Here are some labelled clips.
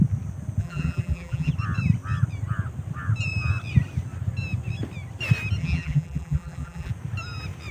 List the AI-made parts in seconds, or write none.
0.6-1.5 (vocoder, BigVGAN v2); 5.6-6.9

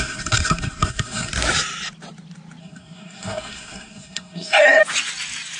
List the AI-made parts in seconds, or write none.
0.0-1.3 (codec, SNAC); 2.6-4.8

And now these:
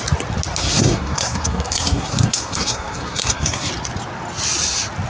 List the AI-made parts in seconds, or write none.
0.6-3.7 (codec, SNAC)

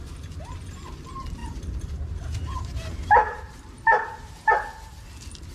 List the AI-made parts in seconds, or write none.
1.4-4.5 (vocoder, BigVGAN v2)

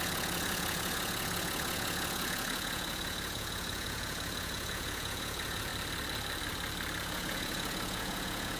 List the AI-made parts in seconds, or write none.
0.0-5.7 (vocoder, Vocos); 7.0-8.6

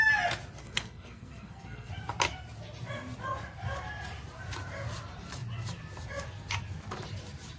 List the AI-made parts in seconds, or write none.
0.6-1.9 (codec, SNAC)